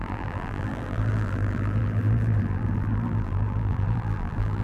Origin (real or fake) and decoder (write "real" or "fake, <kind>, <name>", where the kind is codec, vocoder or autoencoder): fake, vocoder, BigVGAN v2